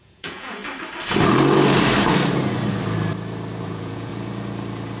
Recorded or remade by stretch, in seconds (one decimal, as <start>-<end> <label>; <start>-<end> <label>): 0.0-0.6 remade; 0.6-3.6 recorded; 3.6-4.1 remade; 4.1-5.0 recorded